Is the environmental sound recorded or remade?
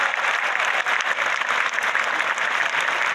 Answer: recorded